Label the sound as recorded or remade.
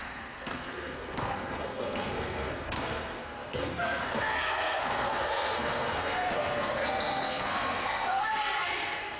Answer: remade